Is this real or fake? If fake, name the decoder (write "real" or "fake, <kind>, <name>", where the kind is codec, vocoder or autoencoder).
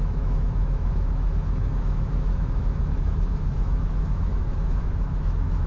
fake, autoencoder, DAC-VAE